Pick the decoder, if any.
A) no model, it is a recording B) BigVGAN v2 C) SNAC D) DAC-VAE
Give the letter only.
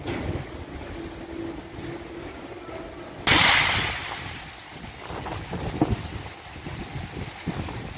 A